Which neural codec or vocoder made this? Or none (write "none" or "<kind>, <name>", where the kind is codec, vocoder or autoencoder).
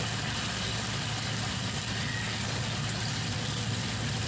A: vocoder, BigVGAN v2